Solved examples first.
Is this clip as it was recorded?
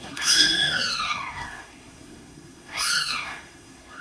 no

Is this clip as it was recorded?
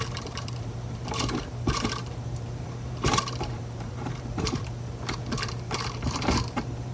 no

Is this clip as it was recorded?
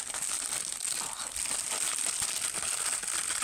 yes